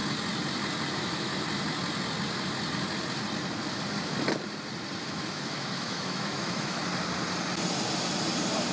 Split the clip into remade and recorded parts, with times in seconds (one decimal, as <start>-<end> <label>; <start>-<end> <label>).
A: 0.0-0.9 recorded; 0.9-1.3 remade; 1.3-5.0 recorded; 5.0-6.8 remade; 6.8-8.7 recorded